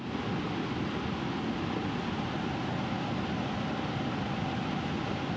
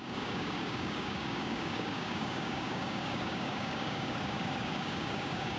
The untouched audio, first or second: first